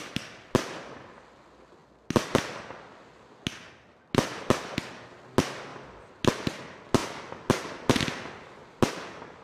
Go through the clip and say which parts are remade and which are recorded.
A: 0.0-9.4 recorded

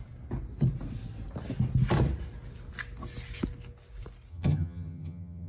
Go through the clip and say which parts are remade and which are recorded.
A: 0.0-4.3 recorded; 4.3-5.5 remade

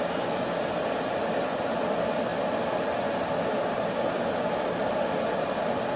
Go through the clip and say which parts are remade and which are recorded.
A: 0.0-6.0 recorded